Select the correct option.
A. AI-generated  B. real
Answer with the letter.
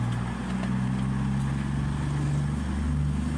B